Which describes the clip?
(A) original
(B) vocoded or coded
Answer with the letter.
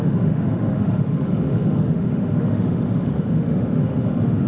B